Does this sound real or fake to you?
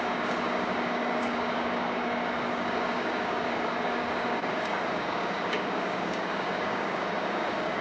fake